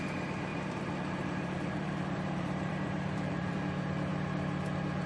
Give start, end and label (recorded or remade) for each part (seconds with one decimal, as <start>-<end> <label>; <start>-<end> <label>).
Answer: 0.0-0.5 recorded; 0.5-3.6 remade; 3.6-5.1 recorded